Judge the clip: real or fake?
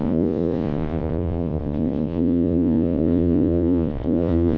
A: fake